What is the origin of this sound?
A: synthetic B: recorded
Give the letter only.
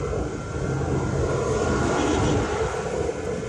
B